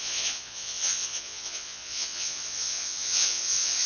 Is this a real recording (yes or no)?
no